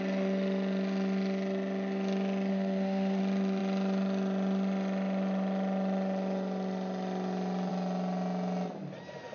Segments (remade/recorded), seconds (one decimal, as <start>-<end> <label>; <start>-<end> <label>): 0.0-2.5 recorded; 2.5-3.2 remade; 3.2-9.3 recorded

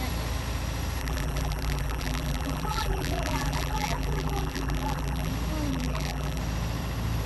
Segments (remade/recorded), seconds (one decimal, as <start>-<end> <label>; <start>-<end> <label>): 0.0-1.0 recorded; 1.0-5.3 remade; 5.3-5.7 recorded; 5.7-6.4 remade; 6.4-7.3 recorded

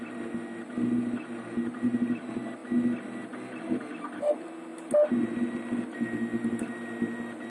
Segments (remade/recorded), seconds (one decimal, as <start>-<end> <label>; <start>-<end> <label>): 0.0-7.5 recorded

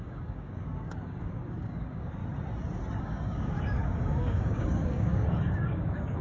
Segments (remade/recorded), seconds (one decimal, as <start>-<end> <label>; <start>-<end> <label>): 0.0-2.2 remade; 2.2-3.0 recorded; 3.0-6.2 remade

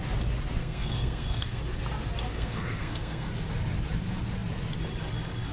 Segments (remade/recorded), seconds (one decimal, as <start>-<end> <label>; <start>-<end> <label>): 0.0-0.6 recorded; 0.6-1.6 remade; 1.6-2.3 recorded; 2.3-3.3 remade; 3.3-5.5 recorded